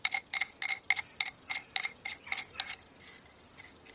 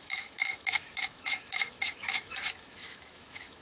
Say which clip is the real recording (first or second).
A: first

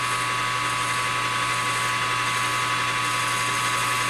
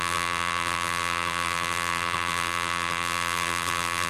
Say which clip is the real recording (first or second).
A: first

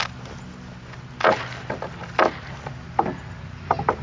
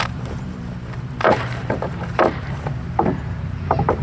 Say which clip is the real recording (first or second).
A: first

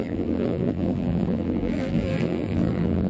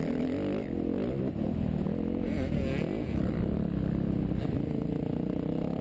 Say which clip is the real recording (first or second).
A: second